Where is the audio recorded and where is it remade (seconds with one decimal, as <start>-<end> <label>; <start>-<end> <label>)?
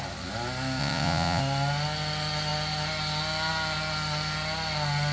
0.0-0.8 recorded; 0.8-1.4 remade; 1.4-5.1 recorded